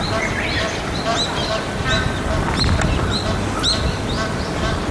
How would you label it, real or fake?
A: real